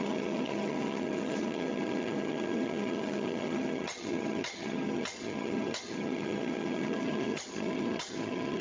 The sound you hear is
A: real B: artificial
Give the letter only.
B